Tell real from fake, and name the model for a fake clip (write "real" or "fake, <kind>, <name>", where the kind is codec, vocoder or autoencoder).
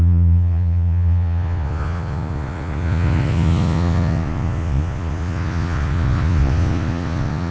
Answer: fake, vocoder, Vocos